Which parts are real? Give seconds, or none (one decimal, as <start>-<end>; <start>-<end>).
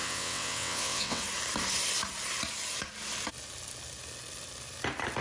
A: 1.2-5.2